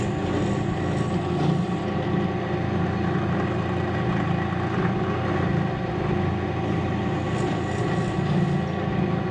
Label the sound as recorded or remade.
recorded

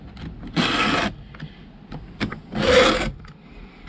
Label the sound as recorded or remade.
recorded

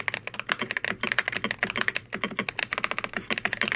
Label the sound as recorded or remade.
recorded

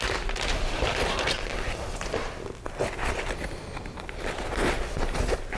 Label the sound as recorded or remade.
recorded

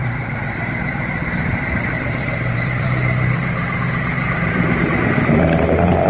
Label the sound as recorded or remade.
remade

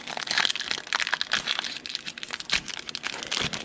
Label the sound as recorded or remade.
recorded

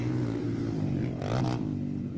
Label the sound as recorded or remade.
recorded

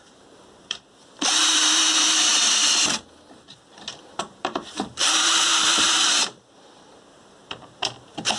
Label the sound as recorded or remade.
remade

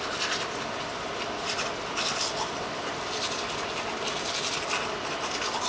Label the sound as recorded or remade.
remade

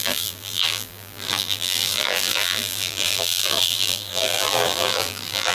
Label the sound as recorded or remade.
remade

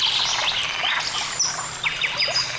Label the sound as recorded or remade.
recorded